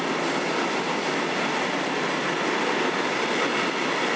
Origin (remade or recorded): recorded